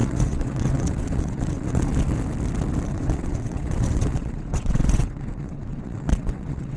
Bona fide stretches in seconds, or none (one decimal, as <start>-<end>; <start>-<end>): 1.9-2.9